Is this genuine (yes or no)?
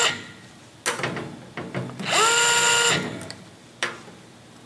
yes